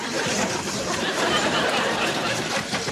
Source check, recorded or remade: remade